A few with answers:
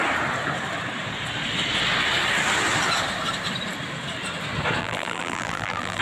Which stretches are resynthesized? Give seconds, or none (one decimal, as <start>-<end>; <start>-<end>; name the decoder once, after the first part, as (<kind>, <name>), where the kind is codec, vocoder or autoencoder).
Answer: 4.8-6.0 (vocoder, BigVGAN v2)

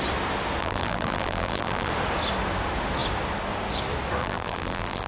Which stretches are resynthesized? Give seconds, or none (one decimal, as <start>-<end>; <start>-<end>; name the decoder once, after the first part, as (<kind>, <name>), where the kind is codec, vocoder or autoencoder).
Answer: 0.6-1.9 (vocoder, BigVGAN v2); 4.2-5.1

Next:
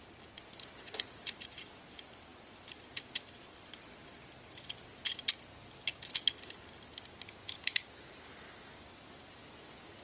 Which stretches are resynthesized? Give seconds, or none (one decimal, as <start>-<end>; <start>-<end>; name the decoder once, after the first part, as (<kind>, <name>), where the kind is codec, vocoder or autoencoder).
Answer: none

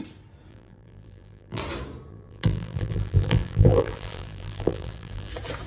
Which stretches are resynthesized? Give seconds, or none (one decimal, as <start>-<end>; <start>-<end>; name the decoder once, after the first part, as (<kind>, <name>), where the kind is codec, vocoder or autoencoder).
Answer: 0.5-1.6 (vocoder, BigVGAN v2); 2.1-5.3